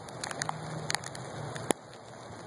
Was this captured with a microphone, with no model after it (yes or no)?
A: yes